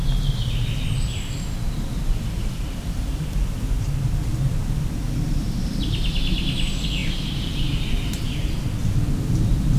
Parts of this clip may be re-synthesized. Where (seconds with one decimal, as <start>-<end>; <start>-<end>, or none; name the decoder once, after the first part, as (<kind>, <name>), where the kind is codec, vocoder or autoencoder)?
7.0-8.6 (vocoder, BigVGAN v2)